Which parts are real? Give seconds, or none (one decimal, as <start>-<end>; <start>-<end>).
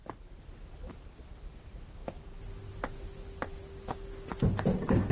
0.0-5.1